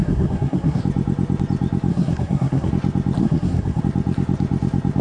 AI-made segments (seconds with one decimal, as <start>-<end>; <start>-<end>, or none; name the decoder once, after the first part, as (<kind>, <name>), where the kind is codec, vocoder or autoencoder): 0.0-0.8 (codec, SNAC); 1.9-2.7; 3.2-3.8